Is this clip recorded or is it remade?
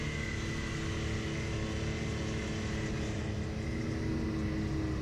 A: recorded